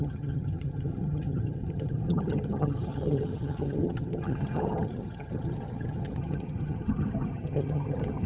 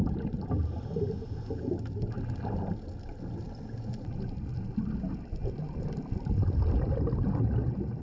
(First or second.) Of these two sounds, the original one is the second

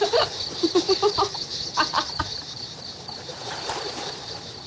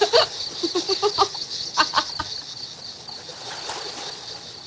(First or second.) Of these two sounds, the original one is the second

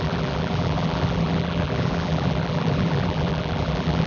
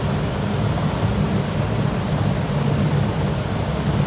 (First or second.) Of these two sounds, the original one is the second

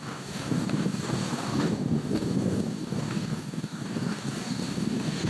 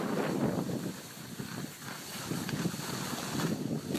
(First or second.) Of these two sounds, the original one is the second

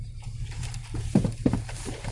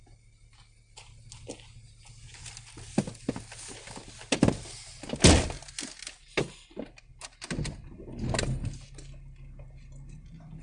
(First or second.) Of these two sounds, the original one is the second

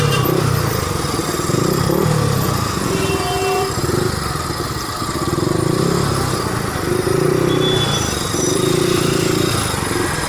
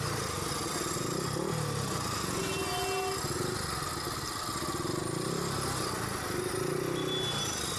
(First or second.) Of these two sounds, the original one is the second